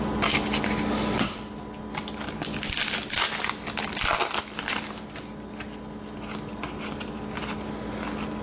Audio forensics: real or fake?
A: real